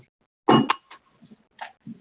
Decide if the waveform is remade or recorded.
recorded